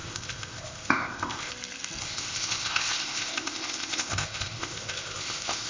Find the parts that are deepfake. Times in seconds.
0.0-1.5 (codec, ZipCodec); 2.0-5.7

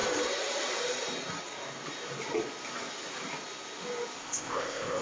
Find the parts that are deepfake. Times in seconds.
4.2-5.0 (codec, ZipCodec)

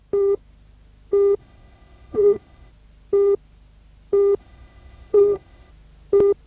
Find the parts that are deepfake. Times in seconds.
1.4-2.7 (codec, ZipCodec); 4.4-5.7

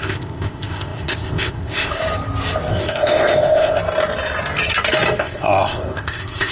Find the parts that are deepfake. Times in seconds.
0.0-2.0 (codec, ZipCodec); 2.7-3.8; 5.2-6.5

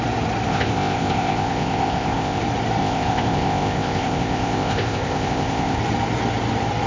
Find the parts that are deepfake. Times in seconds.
0.5-2.4 (codec, ZipCodec); 2.8-5.8

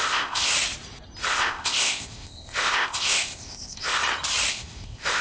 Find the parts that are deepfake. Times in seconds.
0.0-0.5 (codec, ZipCodec); 1.3-4.0; 4.5-5.2